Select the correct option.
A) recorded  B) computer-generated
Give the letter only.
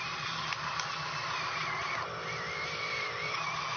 A